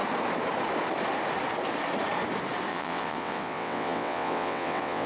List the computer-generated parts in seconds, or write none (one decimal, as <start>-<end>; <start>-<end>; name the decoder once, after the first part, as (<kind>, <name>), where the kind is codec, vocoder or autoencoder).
2.7-5.1 (vocoder, WaveNeXt)